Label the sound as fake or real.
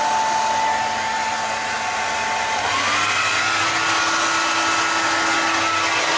real